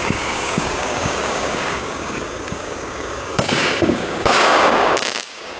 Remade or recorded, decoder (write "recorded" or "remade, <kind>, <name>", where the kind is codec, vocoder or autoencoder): remade, codec, DAC